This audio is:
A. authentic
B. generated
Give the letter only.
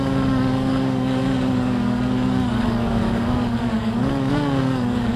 B